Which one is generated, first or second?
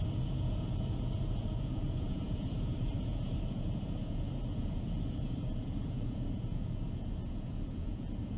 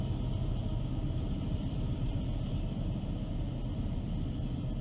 first